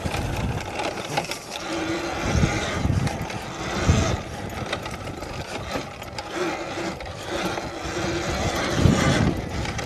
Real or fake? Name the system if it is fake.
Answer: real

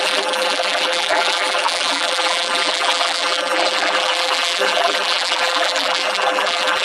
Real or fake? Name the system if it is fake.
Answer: fake, vocoder, BigVGAN v2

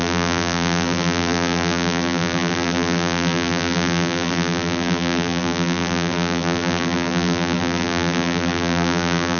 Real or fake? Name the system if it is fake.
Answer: fake, vocoder, BigVGAN v2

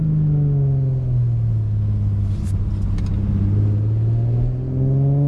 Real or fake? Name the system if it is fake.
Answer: real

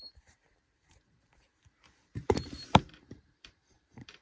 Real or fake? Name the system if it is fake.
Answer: fake, vocoder, BigVGAN v2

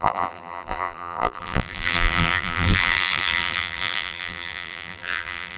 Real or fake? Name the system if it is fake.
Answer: fake, vocoder, BigVGAN v2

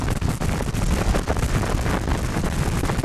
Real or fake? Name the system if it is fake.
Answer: real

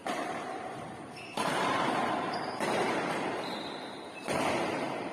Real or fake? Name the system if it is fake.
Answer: fake, vocoder, BigVGAN v2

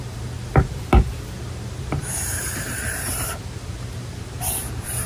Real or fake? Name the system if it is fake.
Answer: fake, vocoder, BigVGAN v2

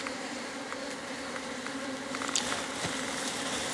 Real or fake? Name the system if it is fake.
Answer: real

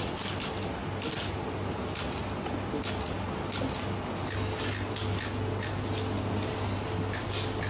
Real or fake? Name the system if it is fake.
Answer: real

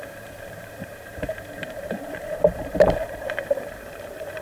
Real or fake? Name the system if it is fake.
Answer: fake, vocoder, BigVGAN v2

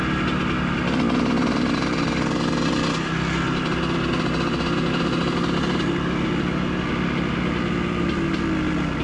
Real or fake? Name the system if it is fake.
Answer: real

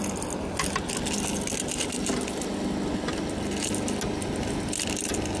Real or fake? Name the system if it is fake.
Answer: real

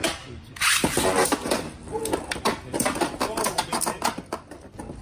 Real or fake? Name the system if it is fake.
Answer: fake, vocoder, BigVGAN v2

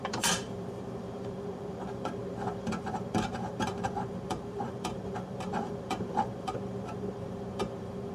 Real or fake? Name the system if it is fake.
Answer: fake, vocoder, BigVGAN v2